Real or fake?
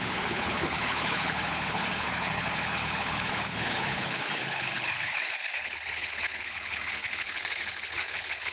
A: fake